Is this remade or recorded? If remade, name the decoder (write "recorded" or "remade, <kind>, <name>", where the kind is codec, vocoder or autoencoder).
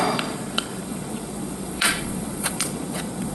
remade, vocoder, Vocos